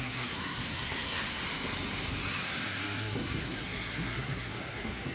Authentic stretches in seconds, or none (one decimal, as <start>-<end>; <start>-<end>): 1.4-2.3